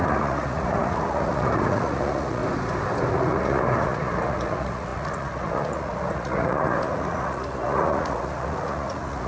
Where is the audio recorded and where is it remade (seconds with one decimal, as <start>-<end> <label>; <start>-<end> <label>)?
0.0-2.4 remade; 2.4-3.1 recorded; 3.1-9.3 remade